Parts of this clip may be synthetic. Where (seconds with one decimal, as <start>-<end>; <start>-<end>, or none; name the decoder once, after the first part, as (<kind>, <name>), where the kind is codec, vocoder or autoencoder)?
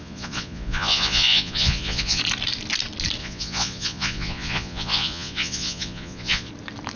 0.0-2.2 (vocoder, Vocos); 3.2-6.5